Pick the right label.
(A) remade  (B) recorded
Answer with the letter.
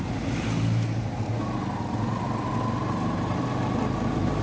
B